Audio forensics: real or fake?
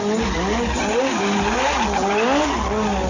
real